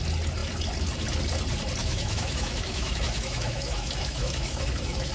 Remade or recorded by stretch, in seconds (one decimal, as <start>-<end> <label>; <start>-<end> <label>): 0.0-1.8 recorded; 1.8-5.1 remade